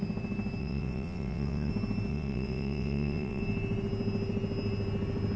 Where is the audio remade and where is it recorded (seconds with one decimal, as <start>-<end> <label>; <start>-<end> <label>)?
0.0-0.6 recorded; 0.6-1.7 remade; 1.7-2.1 recorded; 2.1-3.4 remade; 3.4-5.4 recorded